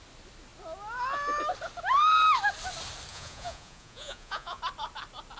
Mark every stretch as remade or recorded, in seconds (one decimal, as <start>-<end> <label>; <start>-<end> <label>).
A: 0.0-3.1 recorded; 3.1-4.6 remade; 4.6-5.4 recorded